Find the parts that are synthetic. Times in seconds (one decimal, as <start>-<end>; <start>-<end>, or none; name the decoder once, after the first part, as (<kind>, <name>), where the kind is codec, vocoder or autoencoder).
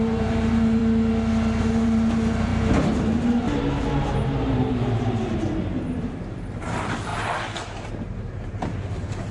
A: 0.0-0.8 (vocoder, BigVGAN v2); 1.6-7.1; 7.9-9.3